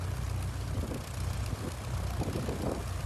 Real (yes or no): yes